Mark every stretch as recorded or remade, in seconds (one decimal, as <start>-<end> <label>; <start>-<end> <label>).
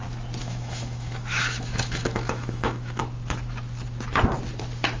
0.0-0.4 recorded; 0.4-3.0 remade; 3.0-5.0 recorded